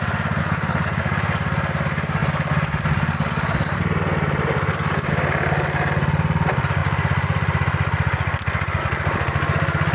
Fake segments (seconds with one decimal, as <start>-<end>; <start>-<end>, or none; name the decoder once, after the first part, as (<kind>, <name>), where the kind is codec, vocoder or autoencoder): 0.4-1.0 (codec, SNAC)